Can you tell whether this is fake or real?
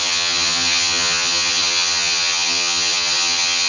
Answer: fake